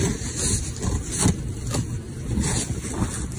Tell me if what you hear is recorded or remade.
recorded